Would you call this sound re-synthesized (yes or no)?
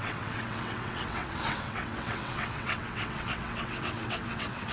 yes